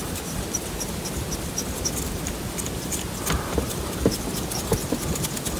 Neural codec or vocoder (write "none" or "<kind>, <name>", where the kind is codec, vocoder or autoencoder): none